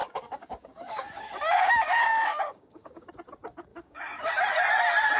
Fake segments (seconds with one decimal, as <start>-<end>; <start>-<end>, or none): 0.0-3.1; 3.7-4.3